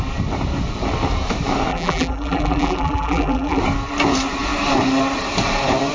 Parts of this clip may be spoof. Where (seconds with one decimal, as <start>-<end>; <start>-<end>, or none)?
1.7-3.6